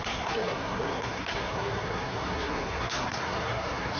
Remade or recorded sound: remade